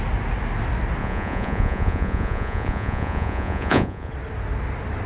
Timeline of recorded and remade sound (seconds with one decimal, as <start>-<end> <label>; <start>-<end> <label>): 0.0-1.0 recorded; 1.0-4.1 remade; 4.1-5.1 recorded